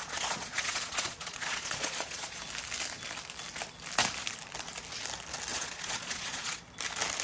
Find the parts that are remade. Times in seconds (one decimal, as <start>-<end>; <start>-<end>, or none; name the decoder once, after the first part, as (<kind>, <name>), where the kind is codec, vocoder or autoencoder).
0.0-2.4 (vocoder, Vocos); 5.5-6.6